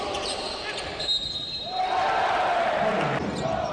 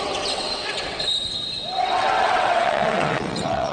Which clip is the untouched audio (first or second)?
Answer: first